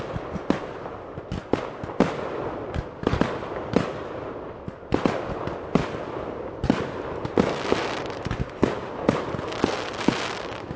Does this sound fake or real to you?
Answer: real